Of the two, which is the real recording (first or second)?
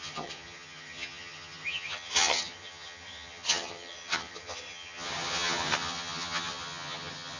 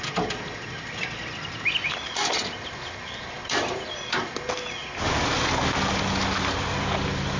second